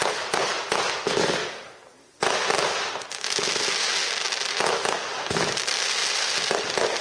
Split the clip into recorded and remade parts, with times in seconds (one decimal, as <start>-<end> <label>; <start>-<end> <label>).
0.0-7.0 recorded

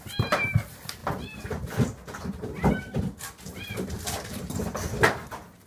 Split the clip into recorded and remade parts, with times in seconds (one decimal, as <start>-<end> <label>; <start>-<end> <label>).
0.0-5.7 recorded